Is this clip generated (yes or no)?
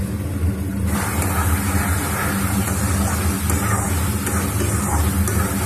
no